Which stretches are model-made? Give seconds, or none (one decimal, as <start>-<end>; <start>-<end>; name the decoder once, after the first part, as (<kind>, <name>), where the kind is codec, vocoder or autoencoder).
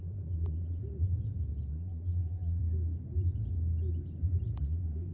0.0-0.8 (vocoder, Vocos); 1.7-2.6; 4.6-5.1